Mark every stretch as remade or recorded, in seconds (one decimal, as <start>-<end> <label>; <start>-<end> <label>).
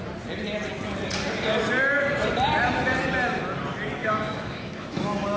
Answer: 0.0-4.0 recorded; 4.0-5.0 remade; 5.0-5.4 recorded